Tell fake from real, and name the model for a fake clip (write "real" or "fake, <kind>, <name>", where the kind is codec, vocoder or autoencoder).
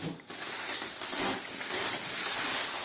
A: real